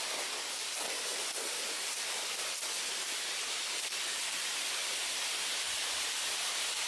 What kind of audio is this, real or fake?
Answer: real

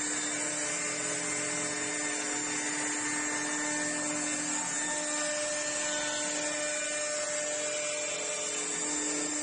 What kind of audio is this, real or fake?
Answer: real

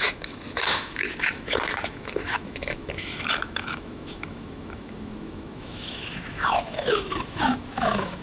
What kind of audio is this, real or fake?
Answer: fake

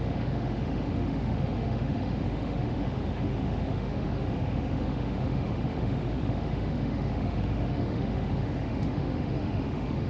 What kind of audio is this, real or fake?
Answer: fake